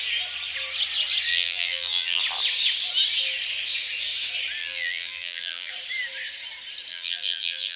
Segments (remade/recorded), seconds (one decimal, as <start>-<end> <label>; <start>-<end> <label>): 0.0-1.3 recorded; 1.3-2.2 remade; 2.2-4.6 recorded; 4.6-5.7 remade; 5.7-6.9 recorded; 6.9-7.8 remade